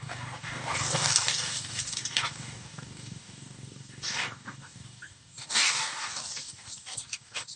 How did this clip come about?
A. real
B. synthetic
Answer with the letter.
B